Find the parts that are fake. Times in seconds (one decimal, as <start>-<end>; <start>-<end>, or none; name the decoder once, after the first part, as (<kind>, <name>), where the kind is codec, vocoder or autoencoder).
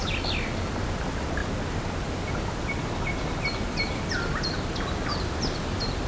none